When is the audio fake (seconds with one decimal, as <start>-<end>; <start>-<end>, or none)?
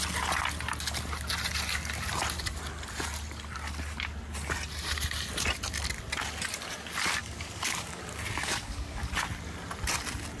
7.2-8.0; 8.4-9.1